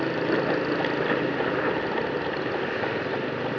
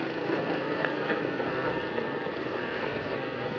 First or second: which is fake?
second